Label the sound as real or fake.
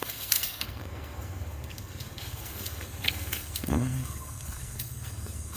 fake